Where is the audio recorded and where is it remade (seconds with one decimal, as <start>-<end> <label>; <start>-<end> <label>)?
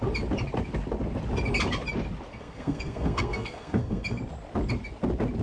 0.0-2.3 recorded; 2.3-4.2 remade; 4.2-5.4 recorded